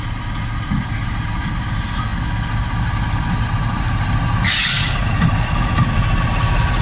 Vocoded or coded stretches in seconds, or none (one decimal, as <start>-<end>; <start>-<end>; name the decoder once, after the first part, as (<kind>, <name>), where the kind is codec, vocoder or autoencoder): none